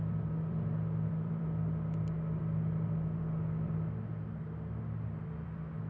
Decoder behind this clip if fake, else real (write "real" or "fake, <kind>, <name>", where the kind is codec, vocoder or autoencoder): real